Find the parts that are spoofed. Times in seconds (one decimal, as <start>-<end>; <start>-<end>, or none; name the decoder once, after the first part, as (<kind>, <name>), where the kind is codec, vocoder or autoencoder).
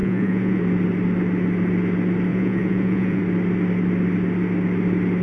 0.0-0.6 (vocoder, Vocos); 2.3-3.2